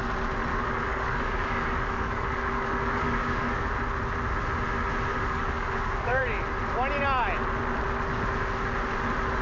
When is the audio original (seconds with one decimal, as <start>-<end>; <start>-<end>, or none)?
0.0-0.5; 3.7-5.1; 6.2-9.4